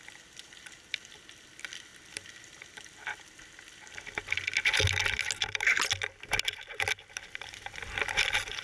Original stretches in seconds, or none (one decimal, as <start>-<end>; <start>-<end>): 0.0-8.6

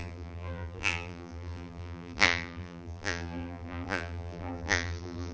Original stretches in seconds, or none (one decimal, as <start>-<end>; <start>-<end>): none

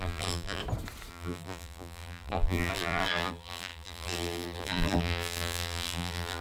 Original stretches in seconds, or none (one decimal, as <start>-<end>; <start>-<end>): 0.6-1.1

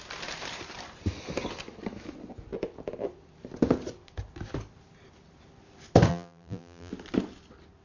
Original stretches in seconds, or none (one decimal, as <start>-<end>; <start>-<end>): 0.0-6.1; 6.9-7.8

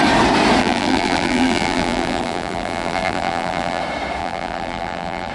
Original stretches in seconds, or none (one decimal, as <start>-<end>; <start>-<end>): 0.0-0.6; 3.8-4.2

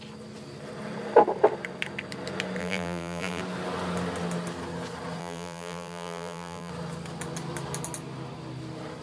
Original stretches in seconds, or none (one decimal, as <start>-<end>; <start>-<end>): 0.0-2.6; 3.4-5.2; 6.7-9.0

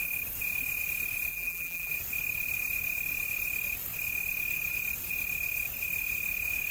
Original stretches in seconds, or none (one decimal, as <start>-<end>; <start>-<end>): 0.0-1.3; 1.9-6.7

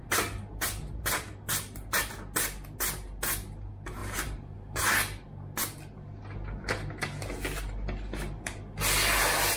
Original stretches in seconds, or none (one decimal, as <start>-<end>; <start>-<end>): 0.0-4.0; 4.8-9.6